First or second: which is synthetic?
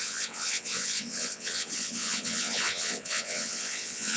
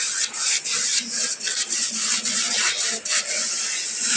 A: first